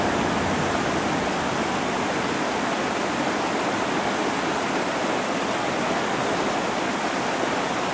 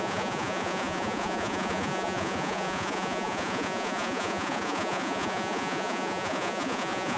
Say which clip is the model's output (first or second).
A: second